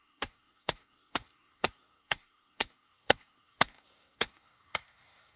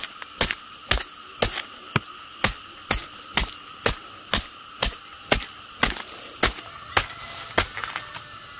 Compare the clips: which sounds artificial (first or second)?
first